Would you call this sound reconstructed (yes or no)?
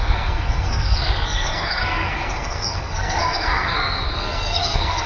yes